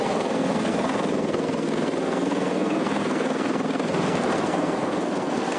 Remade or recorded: remade